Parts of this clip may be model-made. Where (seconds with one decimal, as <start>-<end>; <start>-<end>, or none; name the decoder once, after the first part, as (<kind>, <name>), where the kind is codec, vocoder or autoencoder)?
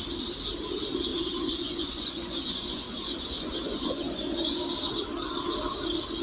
1.1-4.6 (vocoder, Vocos)